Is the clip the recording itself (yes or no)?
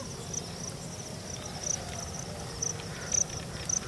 yes